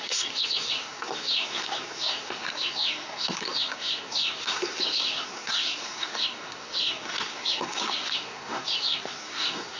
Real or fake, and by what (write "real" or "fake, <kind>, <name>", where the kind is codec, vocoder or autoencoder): fake, codec, SNAC